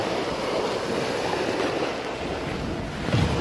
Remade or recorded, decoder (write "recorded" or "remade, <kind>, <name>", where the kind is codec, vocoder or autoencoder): recorded